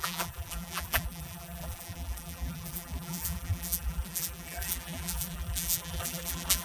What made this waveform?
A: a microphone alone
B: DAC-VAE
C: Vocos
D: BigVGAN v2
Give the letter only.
D